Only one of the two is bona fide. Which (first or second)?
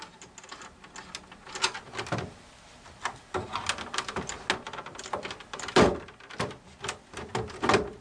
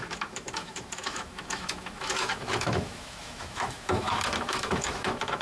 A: first